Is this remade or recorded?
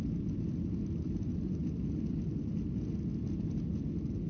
recorded